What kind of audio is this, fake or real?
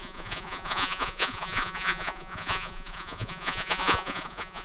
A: fake